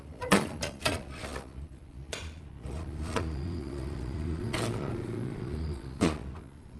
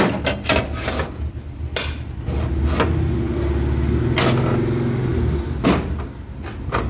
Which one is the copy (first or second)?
first